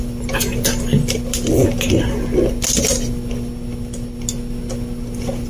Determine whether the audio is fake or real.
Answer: real